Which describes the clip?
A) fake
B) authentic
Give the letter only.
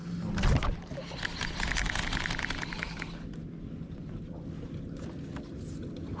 B